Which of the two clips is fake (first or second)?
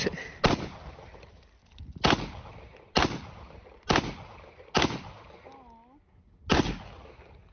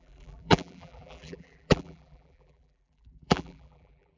second